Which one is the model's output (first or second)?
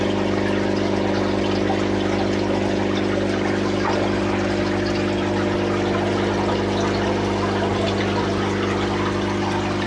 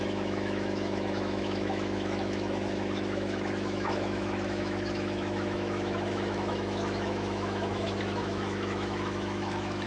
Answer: second